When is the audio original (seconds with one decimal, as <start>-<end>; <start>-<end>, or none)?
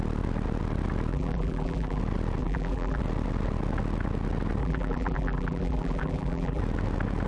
0.0-1.1; 2.0-2.4; 3.0-4.6; 6.6-7.3